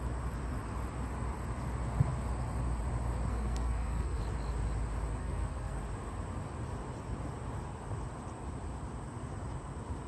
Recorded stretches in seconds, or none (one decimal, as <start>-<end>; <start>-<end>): 0.0-3.3; 4.2-5.2; 5.8-10.1